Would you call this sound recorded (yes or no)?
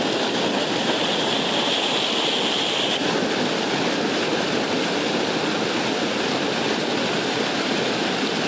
yes